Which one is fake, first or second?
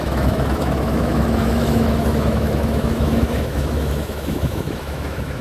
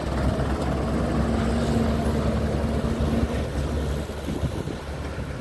first